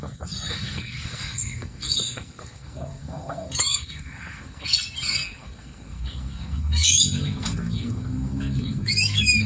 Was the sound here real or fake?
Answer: fake